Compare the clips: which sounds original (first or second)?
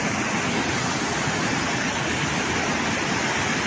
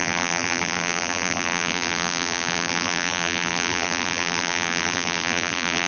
first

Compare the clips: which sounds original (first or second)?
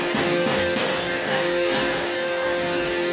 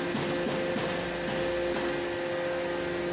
second